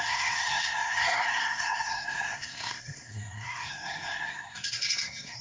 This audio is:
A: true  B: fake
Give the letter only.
B